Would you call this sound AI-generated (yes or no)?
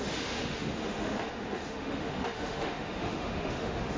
yes